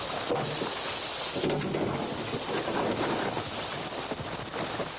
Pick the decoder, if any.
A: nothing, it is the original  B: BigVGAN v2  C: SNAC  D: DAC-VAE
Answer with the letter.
A